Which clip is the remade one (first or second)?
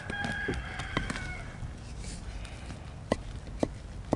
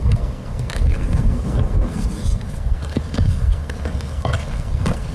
second